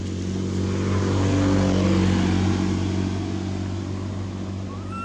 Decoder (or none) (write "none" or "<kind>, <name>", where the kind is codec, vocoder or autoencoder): none